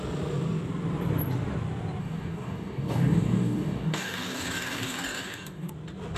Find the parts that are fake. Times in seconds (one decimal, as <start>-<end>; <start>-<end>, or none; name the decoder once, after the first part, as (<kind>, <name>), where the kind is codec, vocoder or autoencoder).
2.0-5.7 (codec, DAC)